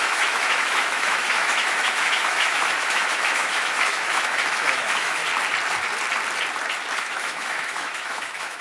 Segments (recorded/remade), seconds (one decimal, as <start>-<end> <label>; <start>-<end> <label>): 0.0-5.2 remade; 5.2-7.0 recorded; 7.0-8.6 remade

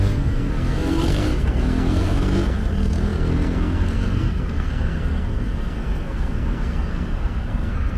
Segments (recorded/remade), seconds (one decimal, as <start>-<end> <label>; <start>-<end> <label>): 0.0-8.0 remade